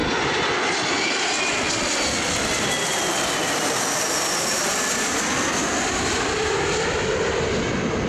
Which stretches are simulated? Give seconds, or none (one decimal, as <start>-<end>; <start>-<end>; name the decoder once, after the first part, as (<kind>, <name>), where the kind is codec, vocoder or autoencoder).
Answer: none